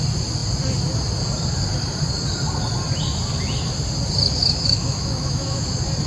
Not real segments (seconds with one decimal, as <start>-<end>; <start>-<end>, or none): 4.4-5.6